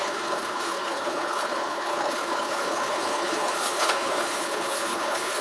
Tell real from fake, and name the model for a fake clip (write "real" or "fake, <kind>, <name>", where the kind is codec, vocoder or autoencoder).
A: fake, codec, HILCodec